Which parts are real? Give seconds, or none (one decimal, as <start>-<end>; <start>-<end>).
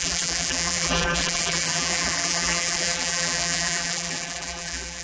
none